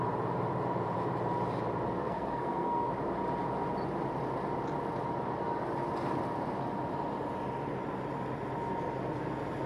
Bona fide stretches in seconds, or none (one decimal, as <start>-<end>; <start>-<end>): 0.0-2.0; 2.9-9.7